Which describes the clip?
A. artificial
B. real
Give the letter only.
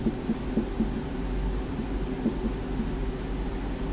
B